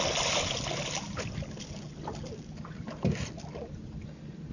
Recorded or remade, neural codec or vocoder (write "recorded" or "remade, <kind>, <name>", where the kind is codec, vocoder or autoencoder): recorded